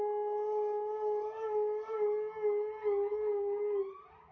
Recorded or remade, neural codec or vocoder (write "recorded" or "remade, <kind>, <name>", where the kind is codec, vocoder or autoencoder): recorded